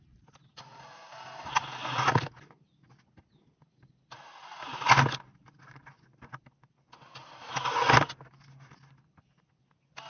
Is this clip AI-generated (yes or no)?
no